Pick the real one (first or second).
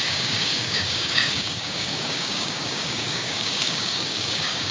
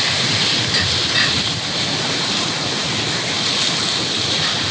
second